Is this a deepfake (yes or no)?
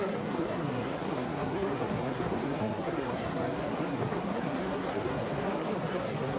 yes